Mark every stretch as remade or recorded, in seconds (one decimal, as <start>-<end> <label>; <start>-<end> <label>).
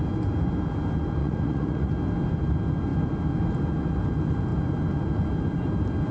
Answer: 0.0-1.2 recorded; 1.2-1.9 remade; 1.9-6.1 recorded